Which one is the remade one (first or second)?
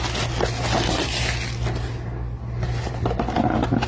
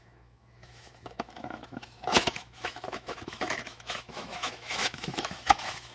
second